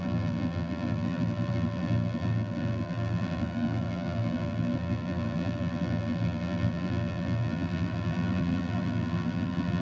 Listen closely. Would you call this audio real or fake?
fake